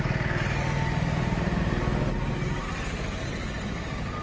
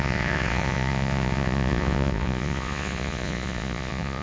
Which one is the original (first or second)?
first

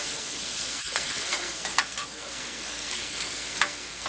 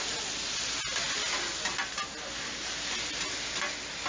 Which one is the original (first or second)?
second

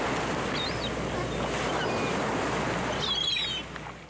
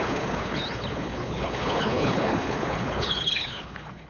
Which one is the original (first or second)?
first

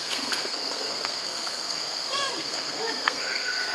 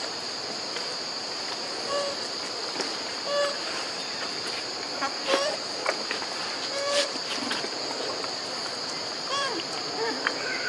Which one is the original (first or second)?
second